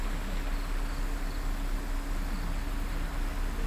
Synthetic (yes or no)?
no